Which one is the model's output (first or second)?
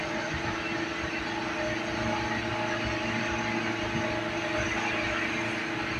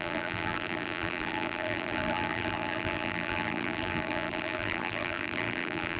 second